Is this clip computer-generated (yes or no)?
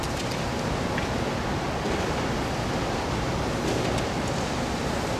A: no